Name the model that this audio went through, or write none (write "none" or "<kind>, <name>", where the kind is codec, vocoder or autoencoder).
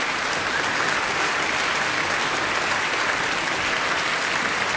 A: vocoder, BigVGAN v2